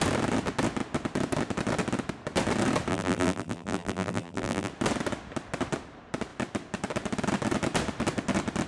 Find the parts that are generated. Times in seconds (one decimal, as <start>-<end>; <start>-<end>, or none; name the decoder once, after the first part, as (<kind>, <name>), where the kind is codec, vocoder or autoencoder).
2.9-4.7 (vocoder, BigVGAN v2)